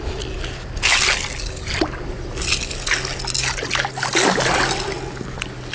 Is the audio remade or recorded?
recorded